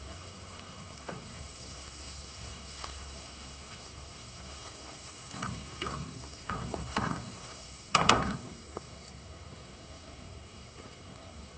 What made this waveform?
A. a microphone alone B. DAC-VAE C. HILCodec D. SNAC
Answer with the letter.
D